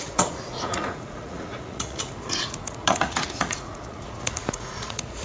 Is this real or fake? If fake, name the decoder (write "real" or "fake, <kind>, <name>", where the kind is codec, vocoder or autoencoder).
fake, vocoder, Vocos